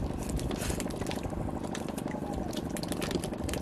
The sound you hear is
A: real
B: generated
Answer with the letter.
B